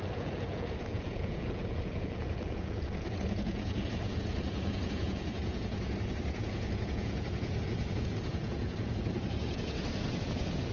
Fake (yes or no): yes